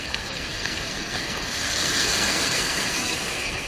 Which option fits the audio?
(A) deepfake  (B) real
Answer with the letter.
A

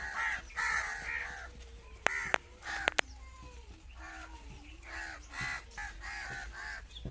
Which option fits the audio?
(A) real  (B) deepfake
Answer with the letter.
A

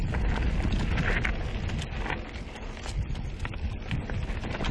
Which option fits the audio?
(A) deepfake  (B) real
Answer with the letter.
B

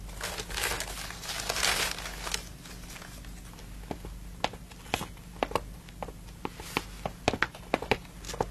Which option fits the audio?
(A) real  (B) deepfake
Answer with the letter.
A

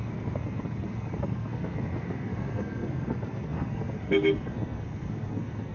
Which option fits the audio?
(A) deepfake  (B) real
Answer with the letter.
A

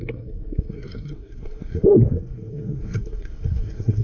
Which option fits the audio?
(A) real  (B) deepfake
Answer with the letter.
B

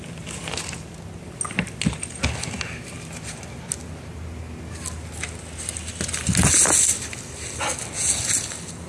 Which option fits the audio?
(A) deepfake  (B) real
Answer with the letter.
B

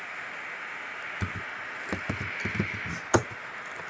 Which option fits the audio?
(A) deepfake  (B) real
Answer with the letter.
B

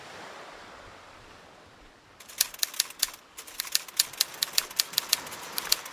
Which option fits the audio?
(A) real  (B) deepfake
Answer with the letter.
A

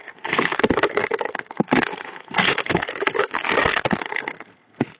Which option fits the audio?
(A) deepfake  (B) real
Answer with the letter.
A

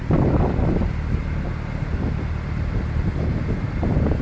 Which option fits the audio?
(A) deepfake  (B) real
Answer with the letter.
B